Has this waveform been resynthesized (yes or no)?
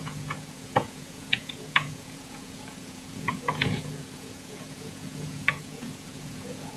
yes